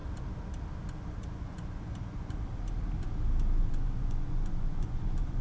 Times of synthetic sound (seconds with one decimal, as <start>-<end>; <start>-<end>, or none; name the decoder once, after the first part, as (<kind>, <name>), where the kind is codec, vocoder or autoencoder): 1.1-2.5 (vocoder, Vocos); 3.6-5.4